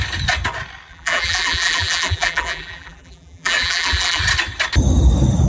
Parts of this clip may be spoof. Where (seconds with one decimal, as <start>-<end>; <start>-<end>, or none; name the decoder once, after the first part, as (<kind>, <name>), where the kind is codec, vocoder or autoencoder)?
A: 0.9-4.2 (vocoder, BigVGAN v2)